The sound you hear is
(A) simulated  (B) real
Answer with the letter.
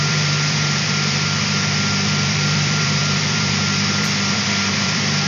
A